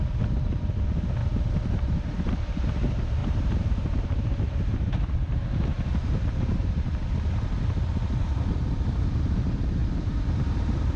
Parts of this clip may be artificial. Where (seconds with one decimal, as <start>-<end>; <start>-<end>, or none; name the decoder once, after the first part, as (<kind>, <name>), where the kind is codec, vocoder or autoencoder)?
1.2-2.4 (vocoder, BigVGAN v2); 3.2-6.1; 9.8-11.0